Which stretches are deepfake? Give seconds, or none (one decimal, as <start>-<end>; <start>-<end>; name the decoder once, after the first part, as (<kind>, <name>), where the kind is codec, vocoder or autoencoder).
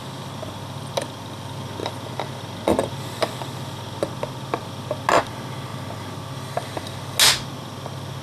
none